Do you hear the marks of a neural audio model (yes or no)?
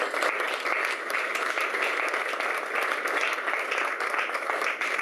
no